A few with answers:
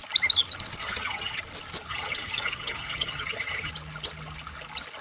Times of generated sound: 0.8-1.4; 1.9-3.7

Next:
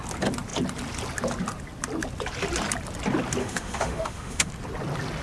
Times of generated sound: 3.4-4.5

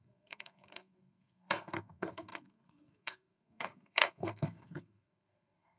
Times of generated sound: 0.0-5.8

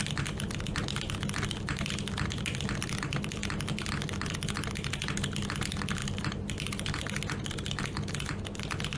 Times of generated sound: none

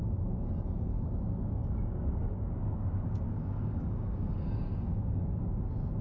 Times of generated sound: 1.6-5.2

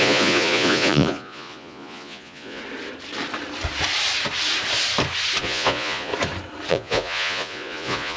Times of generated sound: 0.0-2.6; 5.4-6.1; 6.7-8.2